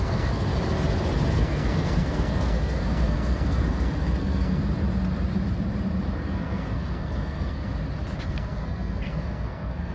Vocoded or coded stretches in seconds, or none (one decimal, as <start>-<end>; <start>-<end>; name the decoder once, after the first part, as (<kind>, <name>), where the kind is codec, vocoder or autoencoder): 0.0-0.5 (codec, SNAC); 1.3-4.6; 6.2-7.7; 8.3-9.9